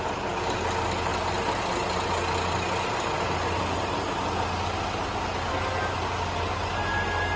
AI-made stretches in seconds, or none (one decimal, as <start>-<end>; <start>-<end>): none